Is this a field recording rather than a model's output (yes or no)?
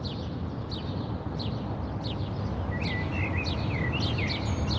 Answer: yes